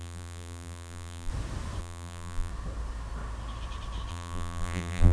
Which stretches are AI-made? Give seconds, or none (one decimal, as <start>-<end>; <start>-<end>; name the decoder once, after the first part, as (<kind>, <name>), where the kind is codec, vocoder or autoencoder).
0.0-1.3 (vocoder, BigVGAN v2); 1.8-2.5; 4.1-5.1